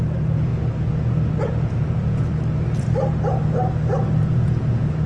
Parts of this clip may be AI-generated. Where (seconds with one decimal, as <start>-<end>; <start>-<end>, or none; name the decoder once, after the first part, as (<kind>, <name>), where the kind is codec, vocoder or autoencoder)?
0.0-0.5 (vocoder, Vocos); 1.5-2.3; 4.2-5.1